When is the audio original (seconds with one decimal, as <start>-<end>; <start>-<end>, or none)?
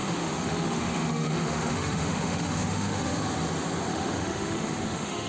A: 3.2-3.9